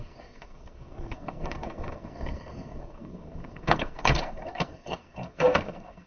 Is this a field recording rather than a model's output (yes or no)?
no